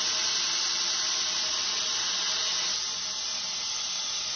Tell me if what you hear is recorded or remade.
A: recorded